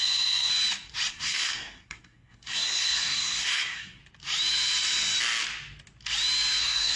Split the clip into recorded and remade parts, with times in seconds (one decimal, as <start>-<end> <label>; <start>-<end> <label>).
0.0-0.5 remade; 0.5-1.1 recorded; 1.1-4.0 remade; 4.0-6.6 recorded; 6.6-7.0 remade